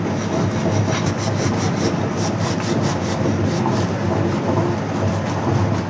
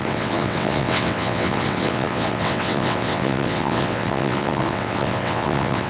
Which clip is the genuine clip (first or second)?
first